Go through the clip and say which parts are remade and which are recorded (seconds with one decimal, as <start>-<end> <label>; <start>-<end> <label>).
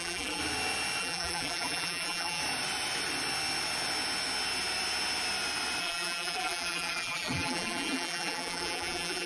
0.0-0.4 remade; 0.4-1.0 recorded; 1.0-2.4 remade; 2.4-5.8 recorded; 5.8-9.3 remade